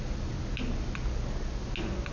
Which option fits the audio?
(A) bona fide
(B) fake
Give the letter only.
A